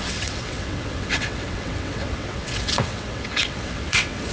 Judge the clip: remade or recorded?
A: remade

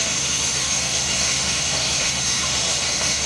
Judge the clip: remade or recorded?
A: remade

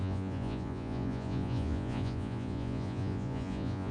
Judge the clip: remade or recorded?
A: remade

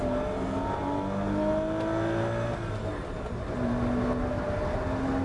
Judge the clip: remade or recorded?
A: recorded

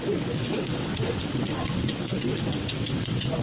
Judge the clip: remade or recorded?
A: remade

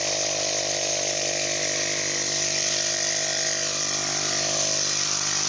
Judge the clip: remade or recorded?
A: recorded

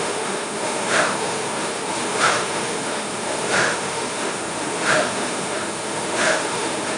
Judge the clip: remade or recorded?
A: remade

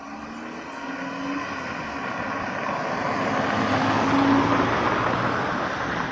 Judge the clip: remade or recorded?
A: recorded